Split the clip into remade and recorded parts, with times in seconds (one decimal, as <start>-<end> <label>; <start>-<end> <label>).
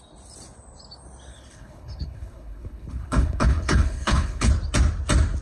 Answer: 0.0-1.3 recorded; 1.3-4.5 remade; 4.5-5.4 recorded